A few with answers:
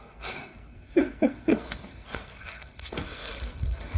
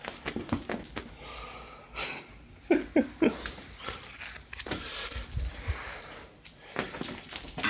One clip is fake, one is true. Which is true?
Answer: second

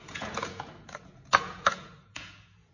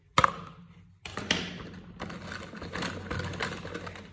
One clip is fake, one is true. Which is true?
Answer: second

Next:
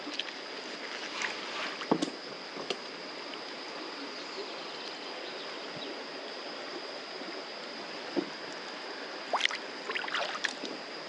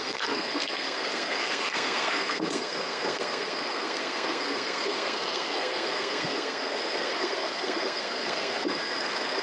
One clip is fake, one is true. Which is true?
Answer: first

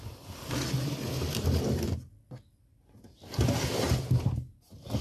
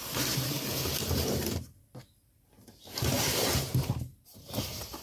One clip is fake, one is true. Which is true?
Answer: first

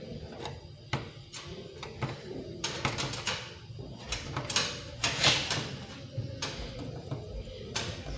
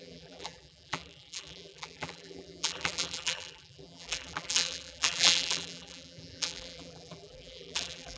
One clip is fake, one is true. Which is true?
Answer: first